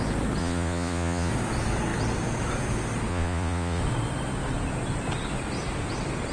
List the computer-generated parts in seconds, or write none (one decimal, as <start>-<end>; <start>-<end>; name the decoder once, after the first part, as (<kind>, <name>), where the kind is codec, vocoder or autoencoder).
0.4-1.3 (vocoder, Vocos); 3.1-3.8